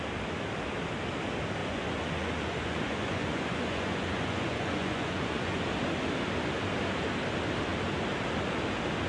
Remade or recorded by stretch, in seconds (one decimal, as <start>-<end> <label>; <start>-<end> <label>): 0.0-1.6 recorded; 1.6-5.6 remade; 5.6-9.1 recorded